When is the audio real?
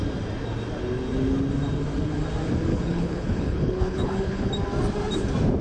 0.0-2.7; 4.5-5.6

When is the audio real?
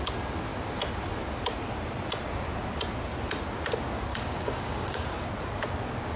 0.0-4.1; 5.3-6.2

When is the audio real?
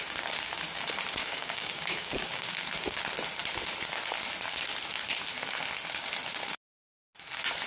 0.0-1.2; 2.5-7.7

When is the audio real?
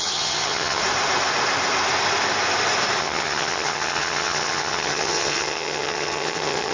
0.8-3.0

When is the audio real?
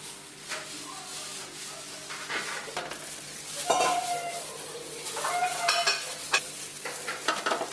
0.0-7.7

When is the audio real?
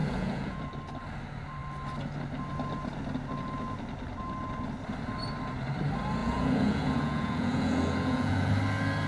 0.6-6.2; 8.5-9.1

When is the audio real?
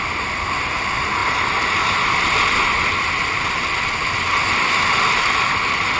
0.0-6.0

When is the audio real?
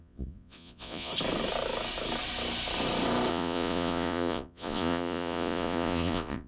1.1-3.3